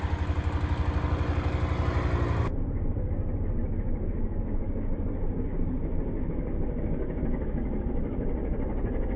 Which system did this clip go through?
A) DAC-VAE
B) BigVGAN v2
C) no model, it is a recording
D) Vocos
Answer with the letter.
C